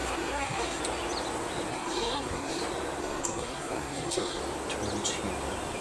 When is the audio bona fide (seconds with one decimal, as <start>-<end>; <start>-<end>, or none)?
0.8-1.7; 2.6-3.0; 4.4-5.8